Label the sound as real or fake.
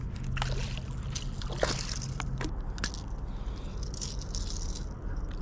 real